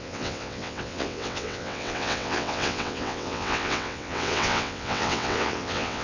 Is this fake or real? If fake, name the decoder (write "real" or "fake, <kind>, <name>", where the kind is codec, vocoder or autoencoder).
fake, vocoder, WaveNeXt